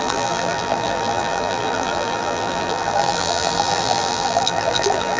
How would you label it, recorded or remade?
remade